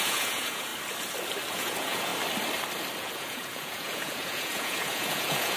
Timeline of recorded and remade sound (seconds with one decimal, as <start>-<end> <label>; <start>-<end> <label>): 0.0-0.7 remade; 0.7-1.5 recorded; 1.5-2.1 remade; 2.1-3.0 recorded; 3.0-5.6 remade